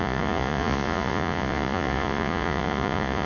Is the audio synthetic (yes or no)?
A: yes